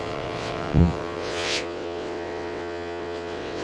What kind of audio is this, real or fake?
fake